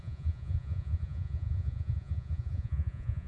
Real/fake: fake